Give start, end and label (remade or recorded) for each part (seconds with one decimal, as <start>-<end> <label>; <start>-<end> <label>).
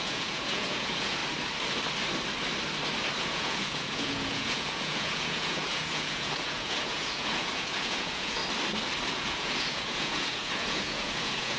0.0-1.2 remade; 1.2-3.2 recorded; 3.2-8.4 remade; 8.4-9.1 recorded; 9.1-11.6 remade